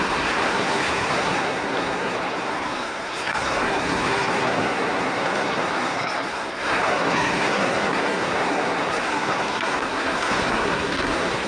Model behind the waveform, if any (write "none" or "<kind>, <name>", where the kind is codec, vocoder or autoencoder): codec, SNAC